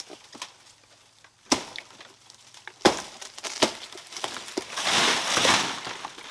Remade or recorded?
recorded